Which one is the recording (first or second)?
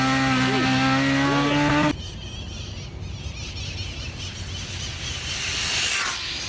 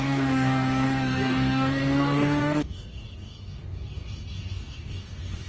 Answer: first